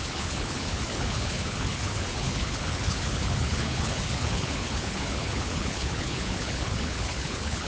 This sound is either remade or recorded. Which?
remade